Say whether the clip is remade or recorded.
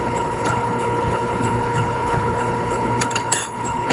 remade